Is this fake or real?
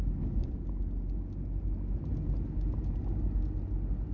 real